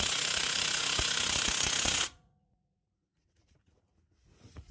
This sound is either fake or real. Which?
fake